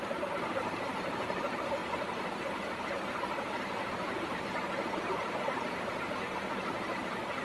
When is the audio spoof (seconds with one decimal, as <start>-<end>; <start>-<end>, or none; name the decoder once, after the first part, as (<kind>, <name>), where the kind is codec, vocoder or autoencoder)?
0.0-1.8 (vocoder, BigVGAN v2); 2.8-7.4